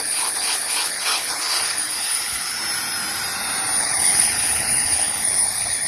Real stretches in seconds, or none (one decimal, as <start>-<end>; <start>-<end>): 2.6-3.8